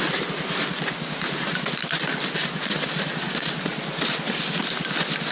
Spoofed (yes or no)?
no